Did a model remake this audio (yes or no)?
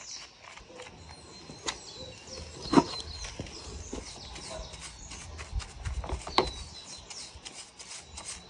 no